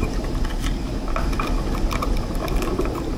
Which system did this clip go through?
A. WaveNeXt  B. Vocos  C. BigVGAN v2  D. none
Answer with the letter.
D